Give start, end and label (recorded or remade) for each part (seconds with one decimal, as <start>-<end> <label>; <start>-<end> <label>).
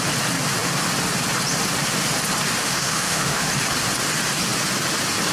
0.0-2.6 recorded; 2.6-3.5 remade; 3.5-5.3 recorded